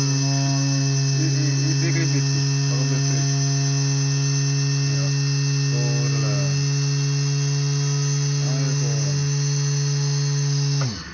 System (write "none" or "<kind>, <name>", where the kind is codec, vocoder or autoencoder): none